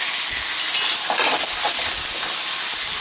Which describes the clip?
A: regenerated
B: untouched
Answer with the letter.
B